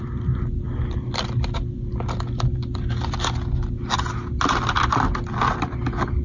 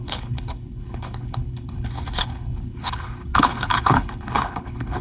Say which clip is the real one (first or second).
first